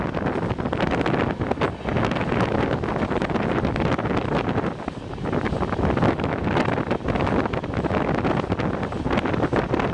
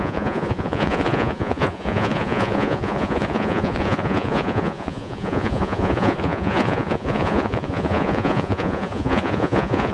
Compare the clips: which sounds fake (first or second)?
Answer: second